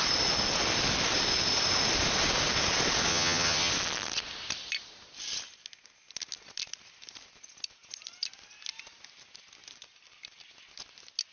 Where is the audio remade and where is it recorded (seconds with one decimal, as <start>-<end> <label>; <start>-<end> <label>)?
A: 0.0-3.1 recorded; 3.1-3.7 remade; 3.7-11.3 recorded